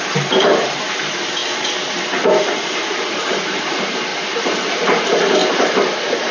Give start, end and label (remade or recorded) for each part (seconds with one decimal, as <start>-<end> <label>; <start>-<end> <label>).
0.0-4.1 remade; 4.1-4.7 recorded; 4.7-5.4 remade; 5.4-6.3 recorded